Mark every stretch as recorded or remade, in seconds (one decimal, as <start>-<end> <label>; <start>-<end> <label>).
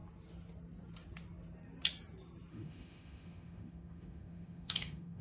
0.0-2.5 recorded; 2.5-5.2 remade